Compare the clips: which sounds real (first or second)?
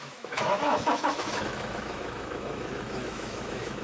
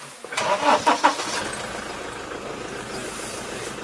second